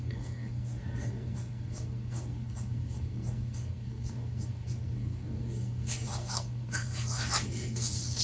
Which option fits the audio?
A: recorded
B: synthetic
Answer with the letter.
B